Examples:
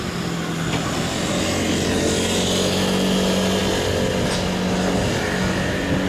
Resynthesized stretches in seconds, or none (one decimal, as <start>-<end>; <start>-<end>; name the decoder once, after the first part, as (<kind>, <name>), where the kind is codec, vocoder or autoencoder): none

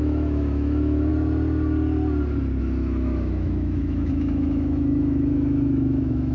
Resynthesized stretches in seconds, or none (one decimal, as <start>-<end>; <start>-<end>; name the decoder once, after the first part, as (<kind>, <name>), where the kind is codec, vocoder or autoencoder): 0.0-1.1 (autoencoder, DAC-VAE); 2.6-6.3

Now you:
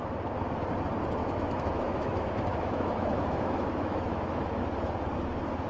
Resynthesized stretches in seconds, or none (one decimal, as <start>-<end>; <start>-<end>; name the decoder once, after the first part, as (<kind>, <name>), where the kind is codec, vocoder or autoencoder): 1.2-4.6 (autoencoder, DAC-VAE)

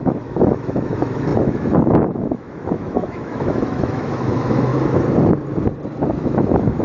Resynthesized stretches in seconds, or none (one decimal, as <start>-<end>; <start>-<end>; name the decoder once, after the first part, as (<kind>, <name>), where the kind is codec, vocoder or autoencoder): 0.0-4.7 (autoencoder, DAC-VAE); 6.2-6.8

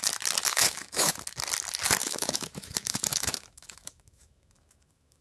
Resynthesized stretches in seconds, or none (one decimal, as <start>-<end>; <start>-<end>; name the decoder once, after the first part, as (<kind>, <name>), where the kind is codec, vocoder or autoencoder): 0.5-1.1 (autoencoder, DAC-VAE); 2.0-5.2